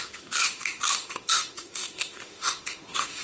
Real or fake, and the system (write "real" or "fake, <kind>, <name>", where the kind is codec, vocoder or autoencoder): fake, autoencoder, DAC-VAE